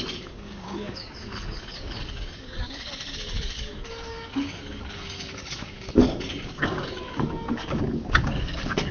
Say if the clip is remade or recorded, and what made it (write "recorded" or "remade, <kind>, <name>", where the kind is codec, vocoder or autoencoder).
remade, codec, DAC